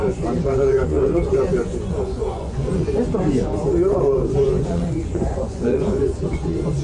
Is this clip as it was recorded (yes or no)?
no